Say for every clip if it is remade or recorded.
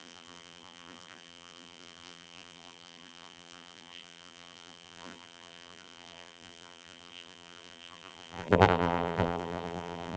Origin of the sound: remade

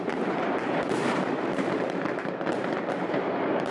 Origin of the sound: remade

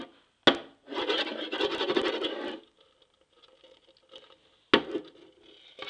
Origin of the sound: recorded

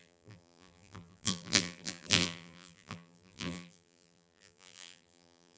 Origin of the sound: remade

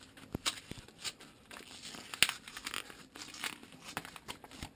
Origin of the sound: recorded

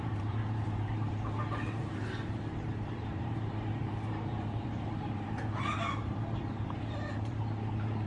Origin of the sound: remade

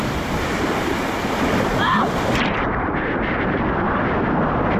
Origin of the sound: recorded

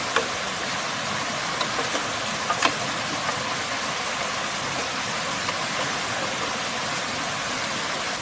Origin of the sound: recorded